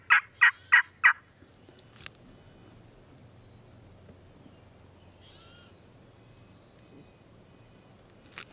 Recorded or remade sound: recorded